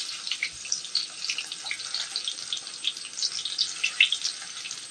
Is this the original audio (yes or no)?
yes